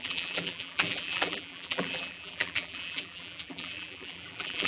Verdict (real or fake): fake